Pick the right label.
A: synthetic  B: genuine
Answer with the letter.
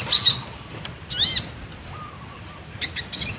B